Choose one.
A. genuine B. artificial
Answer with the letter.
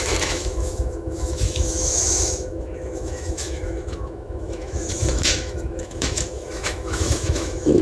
B